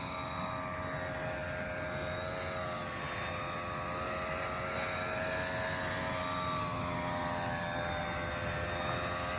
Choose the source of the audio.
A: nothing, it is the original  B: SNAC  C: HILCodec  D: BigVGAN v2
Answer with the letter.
A